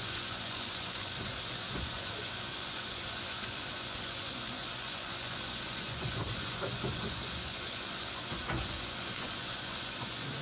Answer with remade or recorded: remade